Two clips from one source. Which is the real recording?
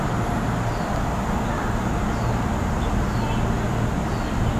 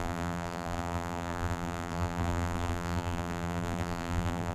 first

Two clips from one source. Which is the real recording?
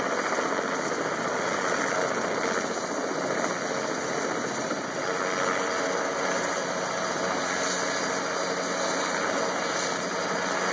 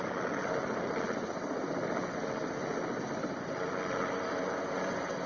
first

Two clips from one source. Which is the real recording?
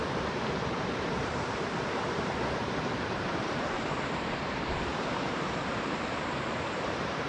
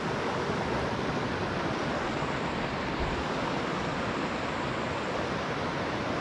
second